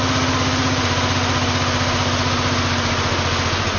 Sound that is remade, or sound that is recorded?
recorded